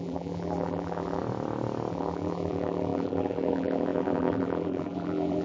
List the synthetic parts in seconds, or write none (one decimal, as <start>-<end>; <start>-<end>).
0.0-1.2; 1.9-5.4